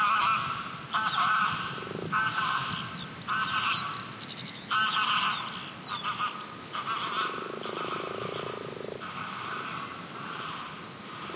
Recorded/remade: recorded